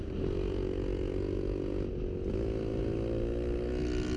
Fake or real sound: real